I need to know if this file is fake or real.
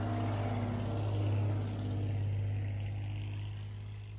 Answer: real